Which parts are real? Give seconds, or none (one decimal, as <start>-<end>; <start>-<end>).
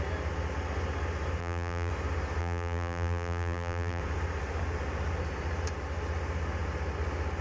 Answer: 0.0-1.4; 1.9-2.4; 4.0-7.4